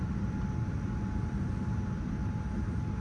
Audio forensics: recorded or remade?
recorded